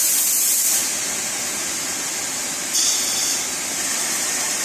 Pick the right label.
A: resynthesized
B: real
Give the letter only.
B